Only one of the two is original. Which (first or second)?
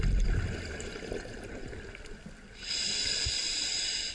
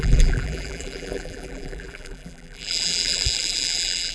first